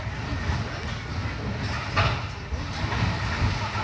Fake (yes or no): no